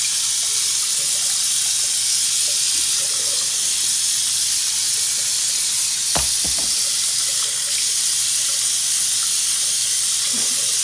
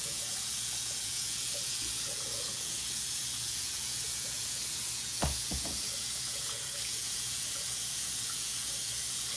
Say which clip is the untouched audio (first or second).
first